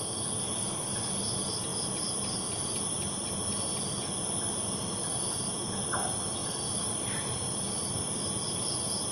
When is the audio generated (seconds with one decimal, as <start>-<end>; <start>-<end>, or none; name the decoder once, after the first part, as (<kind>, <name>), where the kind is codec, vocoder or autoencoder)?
none